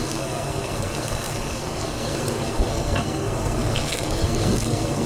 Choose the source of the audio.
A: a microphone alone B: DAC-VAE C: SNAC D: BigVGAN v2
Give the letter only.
C